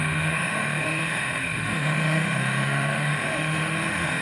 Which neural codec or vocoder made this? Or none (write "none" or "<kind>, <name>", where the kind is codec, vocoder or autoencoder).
autoencoder, DAC-VAE